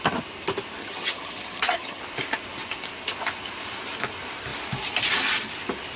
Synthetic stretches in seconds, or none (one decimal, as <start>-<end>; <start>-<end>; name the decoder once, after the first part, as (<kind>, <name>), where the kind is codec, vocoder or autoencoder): 0.8-2.0 (vocoder, HiFi-GAN)